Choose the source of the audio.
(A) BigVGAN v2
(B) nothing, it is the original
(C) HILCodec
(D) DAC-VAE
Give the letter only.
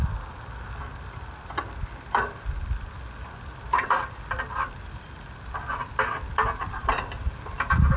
A